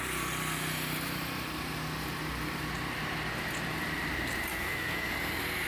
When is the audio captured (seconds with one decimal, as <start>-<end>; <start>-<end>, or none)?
0.0-4.5; 5.1-5.7